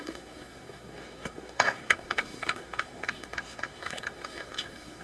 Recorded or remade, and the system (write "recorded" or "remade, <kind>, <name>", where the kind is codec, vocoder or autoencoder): remade, codec, SNAC